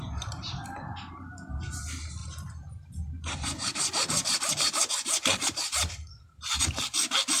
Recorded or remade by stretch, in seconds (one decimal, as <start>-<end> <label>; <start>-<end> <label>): 0.0-2.2 recorded; 2.2-6.6 remade; 6.6-7.4 recorded